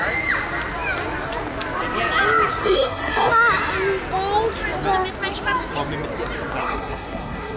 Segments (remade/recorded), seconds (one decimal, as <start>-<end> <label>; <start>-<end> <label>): 0.0-2.6 recorded; 2.6-3.3 remade; 3.3-6.6 recorded; 6.6-7.6 remade